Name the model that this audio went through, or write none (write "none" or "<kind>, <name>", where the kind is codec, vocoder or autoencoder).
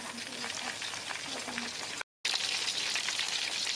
none